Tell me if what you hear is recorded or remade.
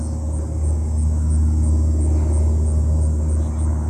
recorded